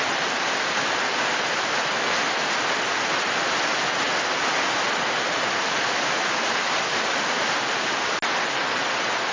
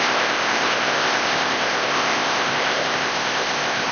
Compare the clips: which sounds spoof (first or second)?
second